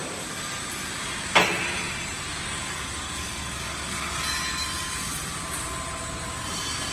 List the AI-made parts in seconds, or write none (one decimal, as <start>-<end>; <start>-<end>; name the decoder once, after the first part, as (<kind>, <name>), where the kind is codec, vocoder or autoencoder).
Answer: 2.6-4.1 (codec, DAC)